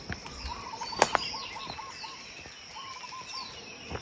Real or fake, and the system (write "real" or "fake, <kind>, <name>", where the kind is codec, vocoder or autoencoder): real